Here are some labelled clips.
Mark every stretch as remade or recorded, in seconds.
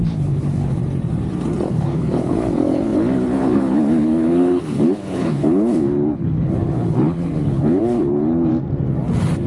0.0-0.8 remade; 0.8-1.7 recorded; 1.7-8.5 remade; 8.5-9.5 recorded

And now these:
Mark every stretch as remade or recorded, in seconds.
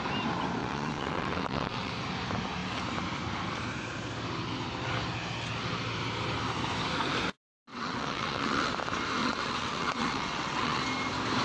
0.0-0.6 recorded; 0.6-1.9 remade; 1.9-7.7 recorded; 7.7-8.7 remade; 8.7-9.2 recorded; 9.2-10.8 remade; 10.8-11.4 recorded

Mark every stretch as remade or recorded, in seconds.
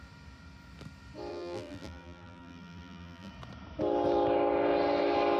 0.0-1.3 recorded; 1.3-3.3 remade; 3.3-5.4 recorded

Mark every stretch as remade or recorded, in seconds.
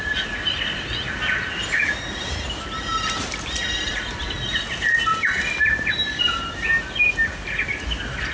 0.0-8.3 recorded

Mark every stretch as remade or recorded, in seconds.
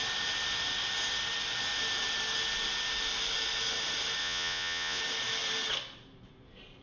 0.0-4.2 recorded; 4.2-5.0 remade; 5.0-6.8 recorded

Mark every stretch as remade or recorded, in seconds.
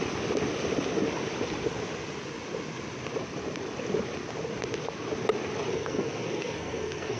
0.0-5.7 recorded; 5.7-7.2 remade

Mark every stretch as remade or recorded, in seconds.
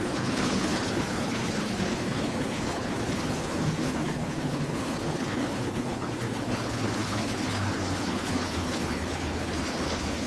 0.0-10.3 remade